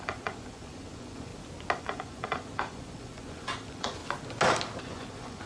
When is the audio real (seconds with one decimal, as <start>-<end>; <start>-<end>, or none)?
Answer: 1.3-1.8; 4.0-4.8